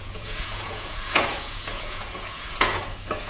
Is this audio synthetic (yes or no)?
yes